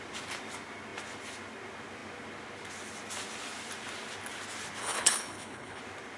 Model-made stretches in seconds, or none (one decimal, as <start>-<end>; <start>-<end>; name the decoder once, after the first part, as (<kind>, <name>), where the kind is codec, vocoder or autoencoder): 4.8-5.8 (codec, HILCodec)